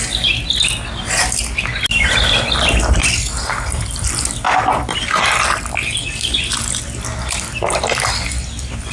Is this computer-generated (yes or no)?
no